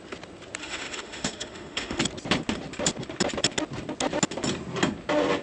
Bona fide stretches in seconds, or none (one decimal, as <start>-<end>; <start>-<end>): 0.0-0.6; 2.0-5.4

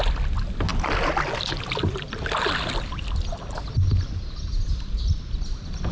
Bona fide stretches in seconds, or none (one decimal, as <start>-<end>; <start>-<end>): 0.0-5.9

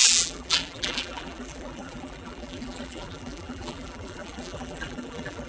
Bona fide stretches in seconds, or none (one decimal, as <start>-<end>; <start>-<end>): none

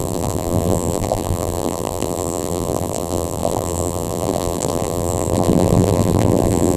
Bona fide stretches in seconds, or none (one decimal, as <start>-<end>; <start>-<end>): none

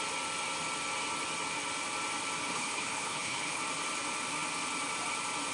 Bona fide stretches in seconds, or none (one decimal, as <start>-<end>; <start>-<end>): 0.0-2.5; 3.6-5.5

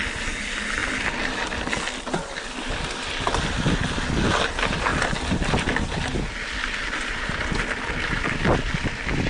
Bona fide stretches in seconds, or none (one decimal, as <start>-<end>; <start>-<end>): 0.0-9.3